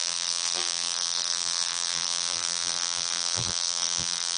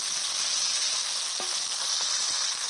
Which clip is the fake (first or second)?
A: first